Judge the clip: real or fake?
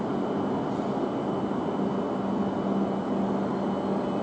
real